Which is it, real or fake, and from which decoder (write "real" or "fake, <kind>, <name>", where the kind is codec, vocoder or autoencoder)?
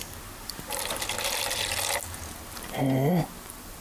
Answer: real